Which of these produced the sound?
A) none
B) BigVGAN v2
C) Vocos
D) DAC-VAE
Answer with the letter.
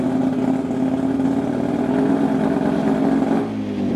A